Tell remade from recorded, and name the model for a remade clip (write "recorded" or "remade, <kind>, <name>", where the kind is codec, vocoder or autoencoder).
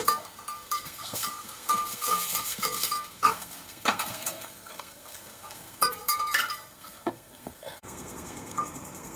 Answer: remade, codec, SNAC